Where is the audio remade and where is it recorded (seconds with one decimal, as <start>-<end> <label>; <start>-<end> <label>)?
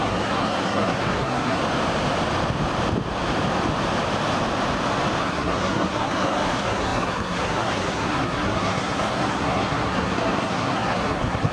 0.0-1.6 remade; 1.6-5.2 recorded; 5.2-11.5 remade